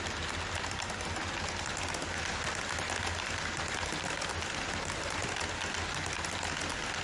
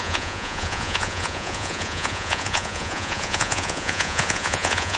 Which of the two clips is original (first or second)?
first